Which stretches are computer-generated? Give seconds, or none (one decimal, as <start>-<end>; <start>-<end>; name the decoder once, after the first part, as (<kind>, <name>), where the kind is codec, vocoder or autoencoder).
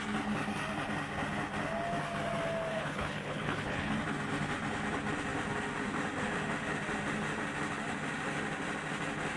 2.7-3.9 (codec, HILCodec)